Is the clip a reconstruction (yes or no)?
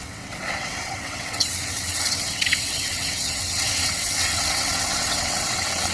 yes